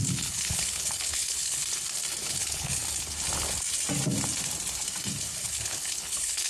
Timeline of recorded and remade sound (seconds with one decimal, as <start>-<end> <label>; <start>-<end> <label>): 0.0-1.6 remade; 1.6-2.2 recorded; 2.2-2.8 remade; 2.8-5.4 recorded; 5.4-6.5 remade